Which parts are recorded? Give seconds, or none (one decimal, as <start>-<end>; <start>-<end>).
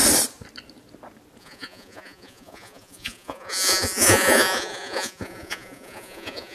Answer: 0.0-1.4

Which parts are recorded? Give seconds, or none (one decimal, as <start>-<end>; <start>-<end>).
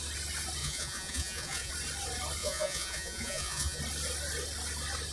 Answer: 0.0-0.6; 1.7-2.4; 3.8-5.1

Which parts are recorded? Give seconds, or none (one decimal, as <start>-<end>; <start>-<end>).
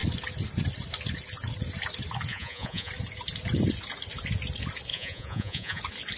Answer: 0.0-2.3; 2.9-4.9; 5.8-6.2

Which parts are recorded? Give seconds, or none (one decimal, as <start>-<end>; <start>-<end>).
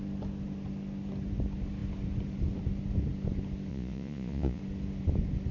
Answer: 0.0-3.7; 4.6-5.5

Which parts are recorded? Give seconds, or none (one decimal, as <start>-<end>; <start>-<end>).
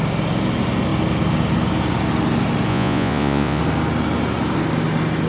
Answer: 0.0-2.7; 3.6-5.3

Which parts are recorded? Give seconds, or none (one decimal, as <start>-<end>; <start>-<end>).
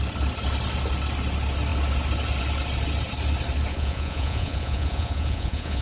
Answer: 0.0-3.7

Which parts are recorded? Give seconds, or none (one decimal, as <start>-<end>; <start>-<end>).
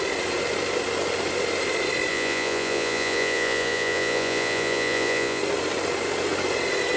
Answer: 0.0-2.1; 5.4-7.0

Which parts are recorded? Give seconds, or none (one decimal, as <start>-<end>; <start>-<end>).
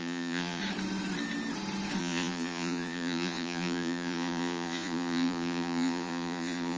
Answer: 0.6-2.0